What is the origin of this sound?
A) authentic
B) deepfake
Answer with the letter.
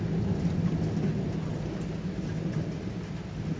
A